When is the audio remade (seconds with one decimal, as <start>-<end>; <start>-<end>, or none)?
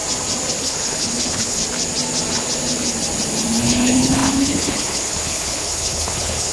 0.6-1.6; 3.6-6.5